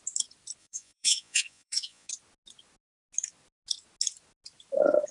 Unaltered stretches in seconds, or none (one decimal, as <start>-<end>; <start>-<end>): 0.0-0.6; 2.1-5.1